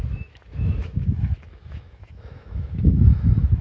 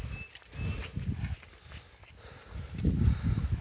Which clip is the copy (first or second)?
first